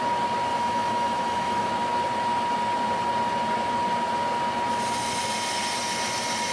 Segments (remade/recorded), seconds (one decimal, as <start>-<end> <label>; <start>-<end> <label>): 0.0-0.5 recorded; 0.5-1.7 remade; 1.7-6.5 recorded

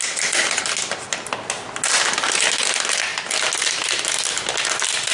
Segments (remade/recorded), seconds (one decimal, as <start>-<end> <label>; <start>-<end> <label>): 0.0-5.1 recorded

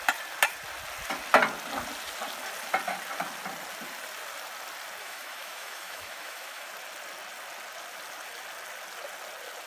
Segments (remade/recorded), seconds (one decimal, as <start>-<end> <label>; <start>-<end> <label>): 0.0-5.0 recorded; 5.0-6.7 remade; 6.7-9.7 recorded